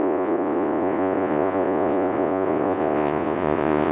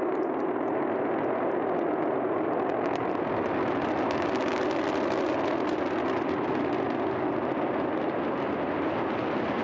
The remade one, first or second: first